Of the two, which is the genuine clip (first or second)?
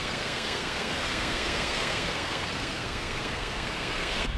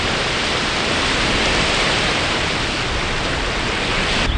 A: second